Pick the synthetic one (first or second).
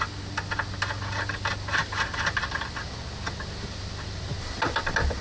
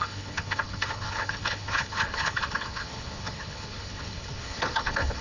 second